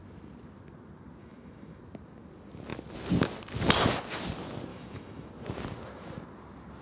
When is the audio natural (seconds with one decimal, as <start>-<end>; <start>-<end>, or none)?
0.0-1.2; 1.8-4.7; 5.3-6.8